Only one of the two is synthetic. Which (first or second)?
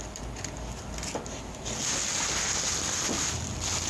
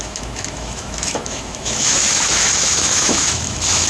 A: second